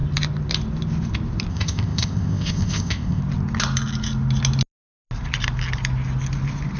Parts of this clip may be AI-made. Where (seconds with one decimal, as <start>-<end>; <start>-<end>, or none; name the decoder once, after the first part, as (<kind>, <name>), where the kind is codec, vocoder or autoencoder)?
1.5-3.2 (codec, ZipCodec)